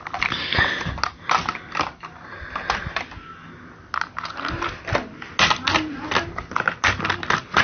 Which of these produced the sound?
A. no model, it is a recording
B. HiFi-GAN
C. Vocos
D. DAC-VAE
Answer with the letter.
A